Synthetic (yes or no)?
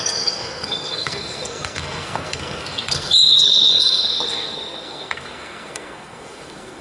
yes